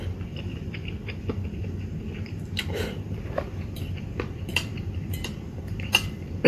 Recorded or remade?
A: remade